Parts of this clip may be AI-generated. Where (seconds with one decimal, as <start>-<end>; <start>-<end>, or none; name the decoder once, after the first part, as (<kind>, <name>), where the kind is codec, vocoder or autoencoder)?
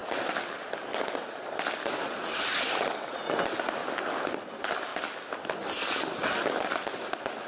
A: none